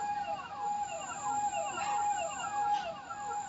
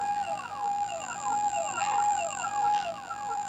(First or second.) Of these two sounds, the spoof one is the second